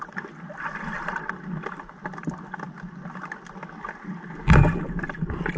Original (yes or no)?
yes